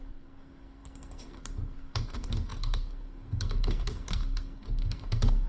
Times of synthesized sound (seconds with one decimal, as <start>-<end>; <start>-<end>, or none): 0.0-5.5